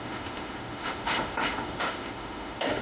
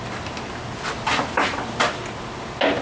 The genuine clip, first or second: second